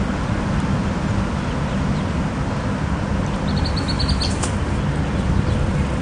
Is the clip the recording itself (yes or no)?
yes